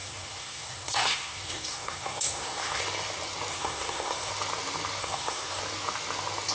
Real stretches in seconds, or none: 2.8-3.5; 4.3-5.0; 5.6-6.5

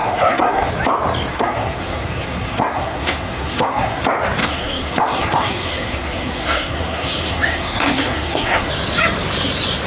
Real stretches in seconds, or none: 0.7-1.3; 4.0-4.4; 8.7-9.9